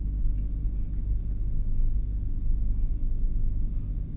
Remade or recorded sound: recorded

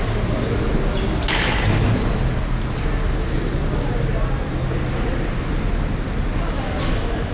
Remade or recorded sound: recorded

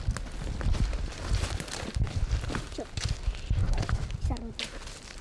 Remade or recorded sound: recorded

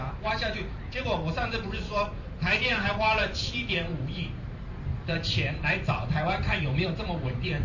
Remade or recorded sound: remade